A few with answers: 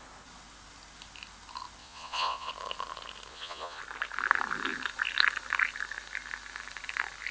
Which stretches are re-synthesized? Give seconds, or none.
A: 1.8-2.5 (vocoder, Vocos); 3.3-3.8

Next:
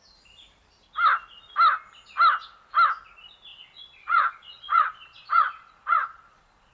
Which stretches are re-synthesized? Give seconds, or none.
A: 3.5-6.7 (vocoder, Vocos)

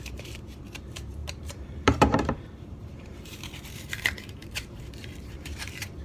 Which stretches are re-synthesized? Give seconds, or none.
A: 0.0-6.0 (vocoder, BigVGAN v2)